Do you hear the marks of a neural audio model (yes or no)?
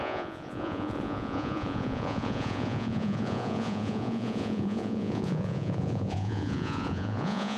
yes